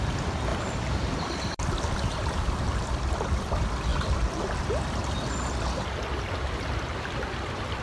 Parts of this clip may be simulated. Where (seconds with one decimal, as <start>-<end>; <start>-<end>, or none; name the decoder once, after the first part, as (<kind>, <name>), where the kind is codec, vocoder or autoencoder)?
0.0-3.9 (vocoder, BigVGAN v2); 6.4-7.8